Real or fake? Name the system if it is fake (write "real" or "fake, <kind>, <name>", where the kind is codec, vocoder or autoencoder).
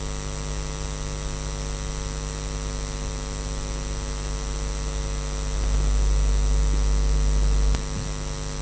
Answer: real